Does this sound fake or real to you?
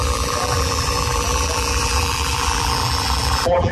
fake